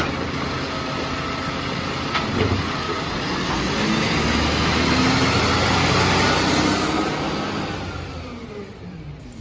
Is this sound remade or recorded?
recorded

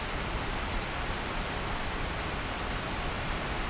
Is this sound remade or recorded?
recorded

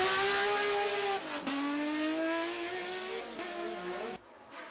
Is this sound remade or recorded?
recorded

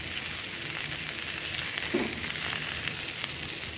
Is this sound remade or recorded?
recorded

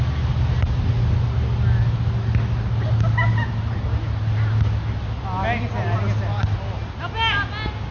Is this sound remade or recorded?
recorded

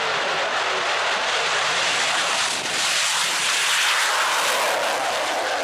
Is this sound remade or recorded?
recorded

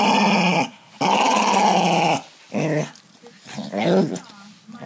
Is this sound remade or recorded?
recorded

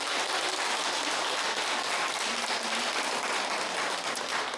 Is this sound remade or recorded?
recorded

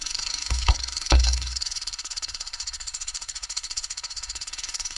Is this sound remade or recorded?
remade